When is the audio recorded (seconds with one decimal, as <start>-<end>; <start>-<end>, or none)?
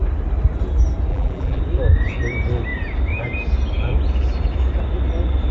0.0-1.1; 1.6-5.5